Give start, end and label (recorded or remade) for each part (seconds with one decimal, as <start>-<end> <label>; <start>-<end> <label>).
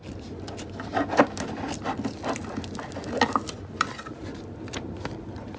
0.0-0.9 recorded; 0.9-4.0 remade; 4.0-5.6 recorded